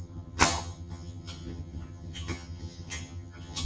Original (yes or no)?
no